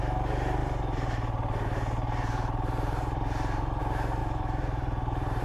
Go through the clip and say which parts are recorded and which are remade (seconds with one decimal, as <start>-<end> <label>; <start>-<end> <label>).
0.0-0.6 recorded; 0.6-3.8 remade; 3.8-4.2 recorded; 4.2-5.4 remade